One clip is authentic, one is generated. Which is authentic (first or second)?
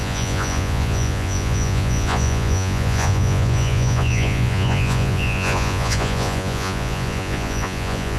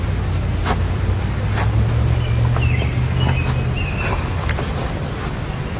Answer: second